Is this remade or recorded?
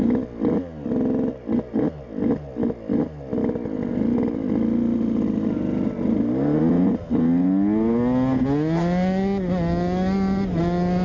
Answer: recorded